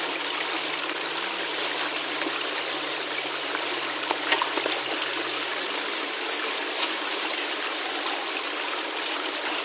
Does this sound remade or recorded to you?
recorded